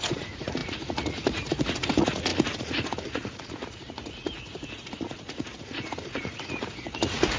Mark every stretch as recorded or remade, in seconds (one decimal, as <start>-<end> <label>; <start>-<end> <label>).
0.0-7.4 remade